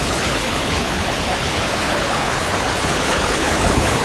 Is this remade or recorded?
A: remade